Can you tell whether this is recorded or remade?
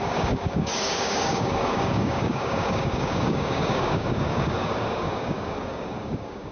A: remade